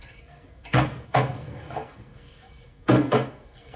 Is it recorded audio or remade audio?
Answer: remade